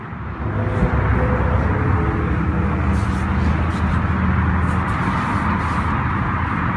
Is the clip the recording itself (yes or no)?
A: yes